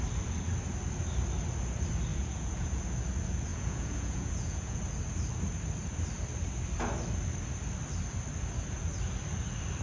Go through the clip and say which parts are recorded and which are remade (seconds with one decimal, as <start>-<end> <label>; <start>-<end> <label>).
0.0-2.1 recorded; 2.1-2.8 remade; 2.8-3.5 recorded; 3.5-4.8 remade; 4.8-9.8 recorded

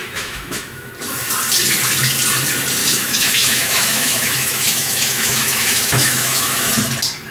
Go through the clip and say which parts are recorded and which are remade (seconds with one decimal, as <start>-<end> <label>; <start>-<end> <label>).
0.0-0.9 remade; 0.9-2.8 recorded; 2.8-6.7 remade; 6.7-7.3 recorded

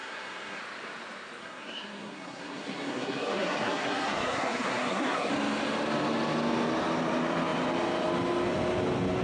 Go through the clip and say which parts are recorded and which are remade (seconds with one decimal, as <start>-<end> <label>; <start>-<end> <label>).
0.0-0.6 remade; 0.6-1.4 recorded; 1.4-5.3 remade; 5.3-9.2 recorded

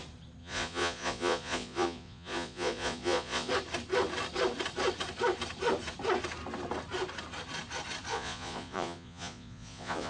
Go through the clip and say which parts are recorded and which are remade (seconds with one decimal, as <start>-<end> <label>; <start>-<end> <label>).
0.0-0.4 recorded; 0.4-3.5 remade; 3.5-8.1 recorded; 8.1-10.1 remade

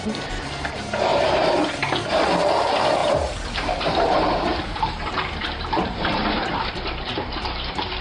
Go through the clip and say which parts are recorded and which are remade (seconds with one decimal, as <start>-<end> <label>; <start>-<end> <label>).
0.0-1.1 recorded; 1.1-2.2 remade; 2.2-3.0 recorded; 3.0-6.7 remade; 6.7-8.0 recorded

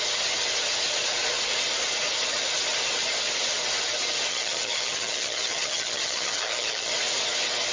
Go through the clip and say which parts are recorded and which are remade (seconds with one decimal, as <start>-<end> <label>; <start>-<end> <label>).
0.0-4.3 recorded; 4.3-6.9 remade; 6.9-7.7 recorded

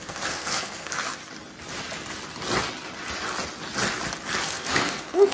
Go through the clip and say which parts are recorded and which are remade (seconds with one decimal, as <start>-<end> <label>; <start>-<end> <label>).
0.0-1.2 remade; 1.2-4.4 recorded; 4.4-5.3 remade